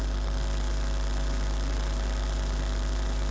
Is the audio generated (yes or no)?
no